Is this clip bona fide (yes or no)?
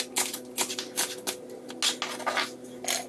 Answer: yes